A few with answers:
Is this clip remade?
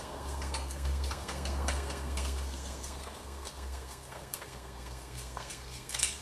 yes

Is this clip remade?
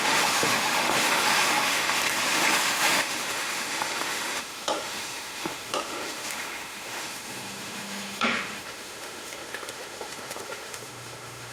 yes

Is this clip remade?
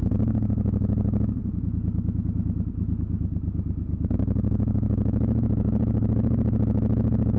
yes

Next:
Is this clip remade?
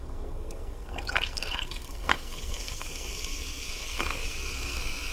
yes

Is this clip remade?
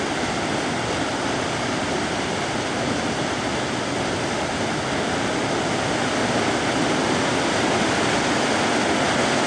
no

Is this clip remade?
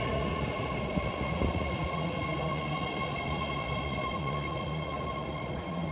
yes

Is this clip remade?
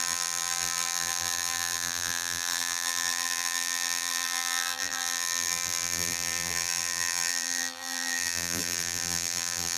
yes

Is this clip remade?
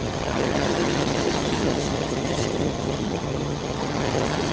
yes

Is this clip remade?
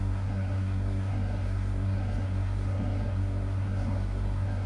yes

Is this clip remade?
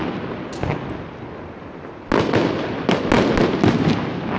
no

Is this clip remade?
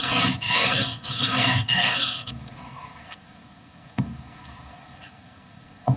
yes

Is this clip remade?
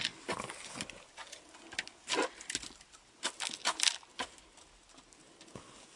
no